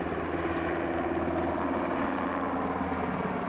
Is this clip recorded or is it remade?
recorded